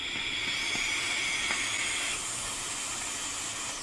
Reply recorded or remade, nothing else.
recorded